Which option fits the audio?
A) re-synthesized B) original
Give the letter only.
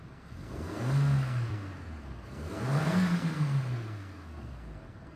A